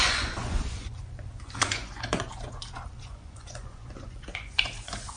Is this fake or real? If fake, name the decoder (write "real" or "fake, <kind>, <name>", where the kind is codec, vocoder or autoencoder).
fake, vocoder, Vocos